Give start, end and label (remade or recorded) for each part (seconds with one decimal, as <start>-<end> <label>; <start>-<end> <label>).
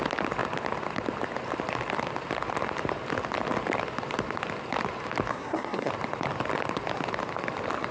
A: 0.0-5.3 recorded; 5.3-5.9 remade; 5.9-7.9 recorded